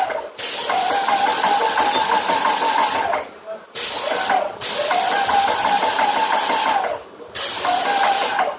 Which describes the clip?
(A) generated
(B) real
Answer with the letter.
B